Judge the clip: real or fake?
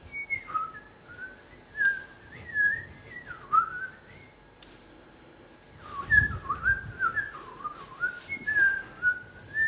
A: real